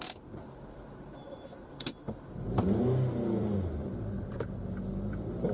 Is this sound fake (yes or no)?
no